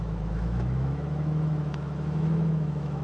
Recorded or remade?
remade